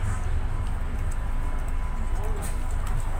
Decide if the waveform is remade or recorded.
recorded